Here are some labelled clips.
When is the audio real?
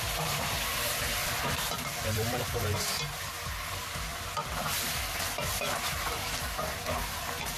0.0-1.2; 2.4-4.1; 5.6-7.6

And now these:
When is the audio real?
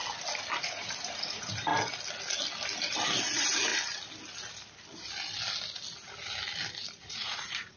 0.0-0.6; 1.7-3.2; 3.7-7.0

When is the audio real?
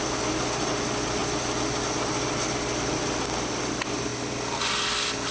0.0-5.3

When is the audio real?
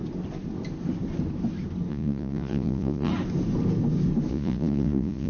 0.0-1.9; 3.1-4.3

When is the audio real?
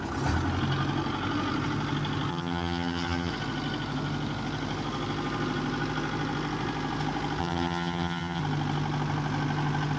0.0-2.3; 3.3-7.4; 8.4-10.0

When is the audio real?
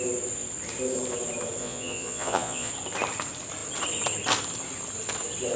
0.0-1.6; 2.7-5.6